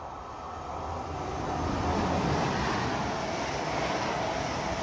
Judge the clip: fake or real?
real